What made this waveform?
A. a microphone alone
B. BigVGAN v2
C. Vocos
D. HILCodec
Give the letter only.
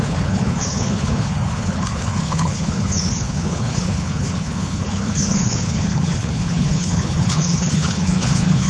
D